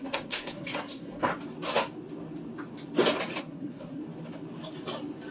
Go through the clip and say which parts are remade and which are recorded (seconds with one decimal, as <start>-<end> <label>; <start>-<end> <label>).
0.0-1.3 remade; 1.3-3.4 recorded; 3.4-4.0 remade; 4.0-5.3 recorded